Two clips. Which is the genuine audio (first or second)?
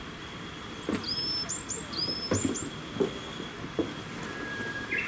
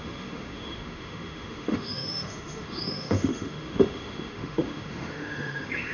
first